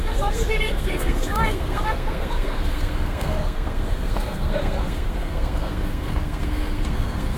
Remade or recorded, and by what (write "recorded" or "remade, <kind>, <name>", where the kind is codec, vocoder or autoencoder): remade, codec, SNAC